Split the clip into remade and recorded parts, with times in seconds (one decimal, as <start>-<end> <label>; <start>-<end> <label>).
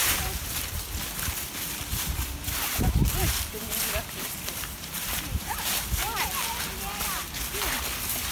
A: 0.0-0.8 remade; 0.8-1.9 recorded; 1.9-6.3 remade; 6.3-8.3 recorded